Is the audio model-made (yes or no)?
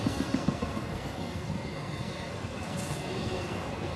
yes